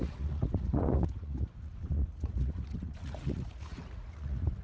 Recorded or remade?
remade